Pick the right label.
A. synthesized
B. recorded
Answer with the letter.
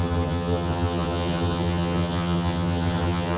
A